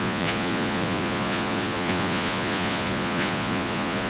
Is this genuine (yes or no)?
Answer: no